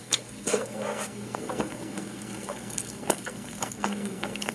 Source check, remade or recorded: remade